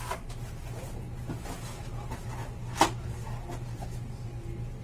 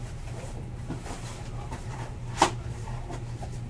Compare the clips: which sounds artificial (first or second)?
second